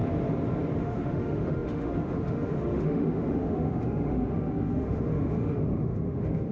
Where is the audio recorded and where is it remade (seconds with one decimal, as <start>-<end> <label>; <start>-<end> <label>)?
0.0-0.8 recorded; 0.8-6.5 remade